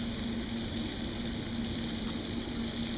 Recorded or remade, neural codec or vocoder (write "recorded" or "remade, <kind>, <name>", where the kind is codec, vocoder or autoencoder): recorded